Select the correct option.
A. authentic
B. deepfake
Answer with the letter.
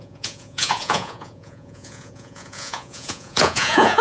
B